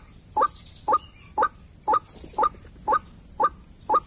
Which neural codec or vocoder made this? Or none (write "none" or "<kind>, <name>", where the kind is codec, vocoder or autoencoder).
none